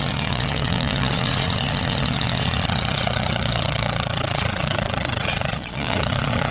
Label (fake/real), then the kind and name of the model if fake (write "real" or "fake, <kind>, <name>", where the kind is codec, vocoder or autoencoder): fake, vocoder, Vocos